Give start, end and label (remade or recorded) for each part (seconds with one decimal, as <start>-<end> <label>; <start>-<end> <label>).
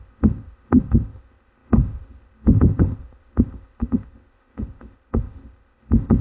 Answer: 0.0-6.2 remade